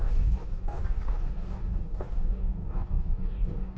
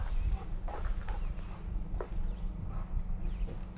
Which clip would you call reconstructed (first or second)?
first